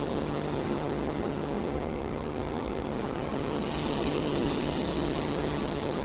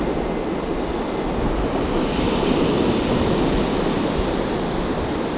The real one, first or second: second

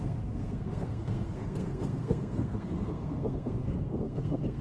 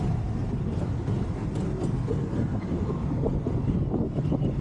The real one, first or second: second